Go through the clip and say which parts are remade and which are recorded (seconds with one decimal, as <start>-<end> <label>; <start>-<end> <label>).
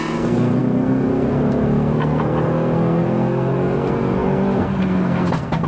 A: 0.0-5.7 remade